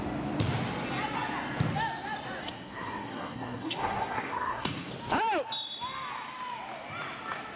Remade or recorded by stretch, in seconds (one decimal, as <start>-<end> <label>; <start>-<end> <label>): 0.0-2.4 recorded; 2.4-4.9 remade; 4.9-7.6 recorded